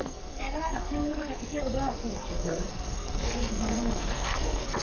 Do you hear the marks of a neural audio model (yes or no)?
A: yes